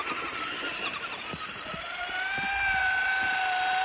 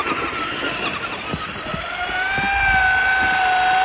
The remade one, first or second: first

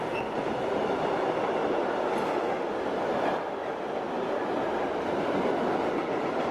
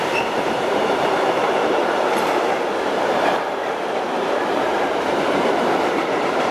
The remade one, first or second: second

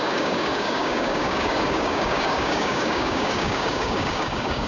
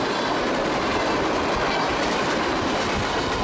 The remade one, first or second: first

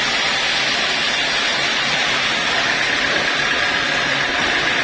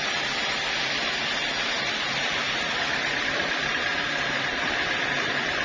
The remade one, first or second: second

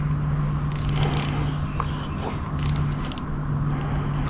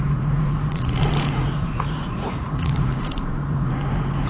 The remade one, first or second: second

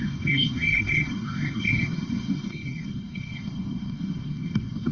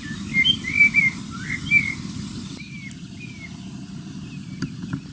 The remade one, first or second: first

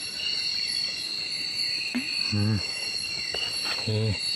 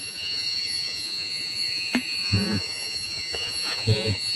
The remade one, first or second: second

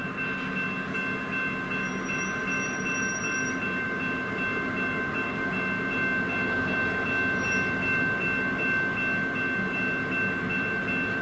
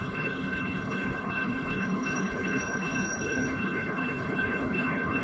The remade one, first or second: second